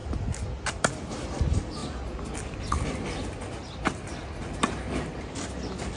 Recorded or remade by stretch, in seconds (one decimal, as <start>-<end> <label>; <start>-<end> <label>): 0.0-1.8 remade; 1.8-5.2 recorded; 5.2-6.0 remade